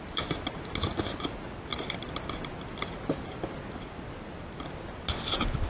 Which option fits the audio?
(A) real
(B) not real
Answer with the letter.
A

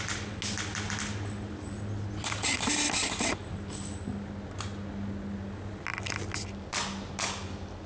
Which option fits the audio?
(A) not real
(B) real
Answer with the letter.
B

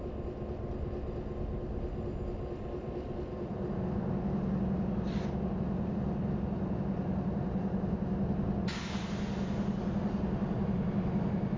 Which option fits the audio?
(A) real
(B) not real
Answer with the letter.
A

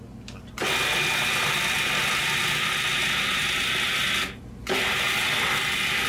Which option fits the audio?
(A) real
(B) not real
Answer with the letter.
A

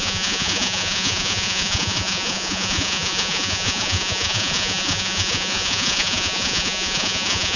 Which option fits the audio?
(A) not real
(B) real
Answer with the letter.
A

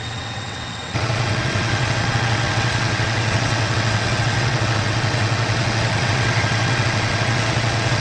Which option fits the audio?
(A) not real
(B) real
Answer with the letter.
A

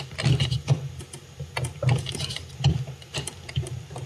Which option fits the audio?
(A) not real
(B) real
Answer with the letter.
B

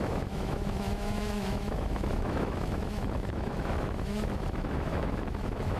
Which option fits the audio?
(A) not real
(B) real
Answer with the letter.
A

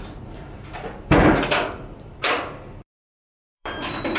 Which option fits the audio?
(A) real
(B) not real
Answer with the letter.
B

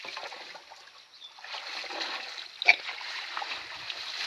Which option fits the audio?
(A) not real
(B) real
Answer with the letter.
B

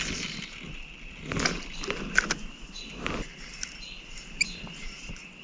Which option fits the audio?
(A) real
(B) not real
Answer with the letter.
A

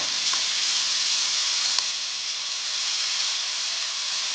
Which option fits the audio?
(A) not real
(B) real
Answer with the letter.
B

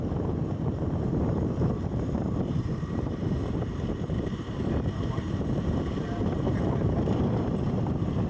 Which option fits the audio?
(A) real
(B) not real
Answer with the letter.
B